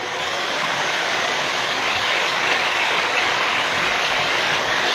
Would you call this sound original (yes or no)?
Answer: no